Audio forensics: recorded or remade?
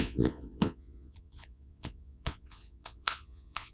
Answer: remade